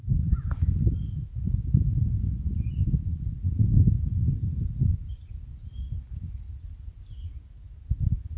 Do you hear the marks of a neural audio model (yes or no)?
no